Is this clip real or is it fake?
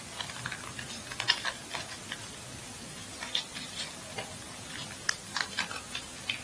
real